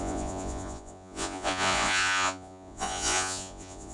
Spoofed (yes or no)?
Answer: yes